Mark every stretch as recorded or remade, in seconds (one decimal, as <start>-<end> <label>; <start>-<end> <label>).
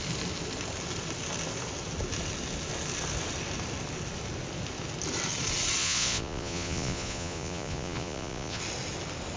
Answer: 0.0-5.8 recorded; 5.8-8.6 remade; 8.6-9.4 recorded